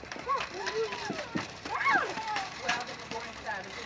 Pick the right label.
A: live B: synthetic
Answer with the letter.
B